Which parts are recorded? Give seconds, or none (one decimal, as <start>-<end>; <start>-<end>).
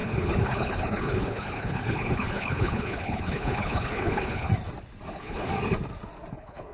4.5-5.1; 5.5-6.3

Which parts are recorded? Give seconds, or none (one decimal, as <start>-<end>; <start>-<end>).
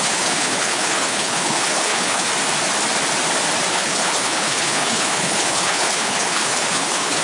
2.3-3.7